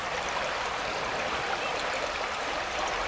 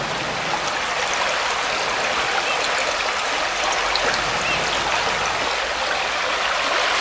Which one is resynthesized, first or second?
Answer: first